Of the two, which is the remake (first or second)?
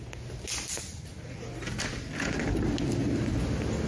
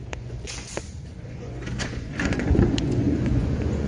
second